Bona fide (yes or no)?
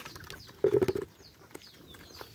yes